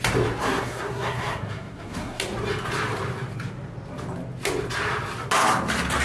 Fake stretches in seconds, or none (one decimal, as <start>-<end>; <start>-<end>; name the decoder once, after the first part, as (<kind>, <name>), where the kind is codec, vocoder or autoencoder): 0.4-2.2 (codec, SNAC)